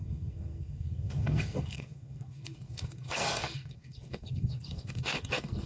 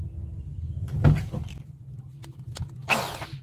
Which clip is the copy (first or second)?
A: first